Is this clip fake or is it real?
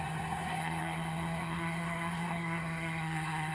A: fake